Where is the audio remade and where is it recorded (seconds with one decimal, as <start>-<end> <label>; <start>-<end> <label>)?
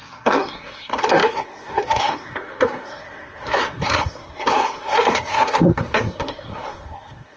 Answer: 0.0-7.4 remade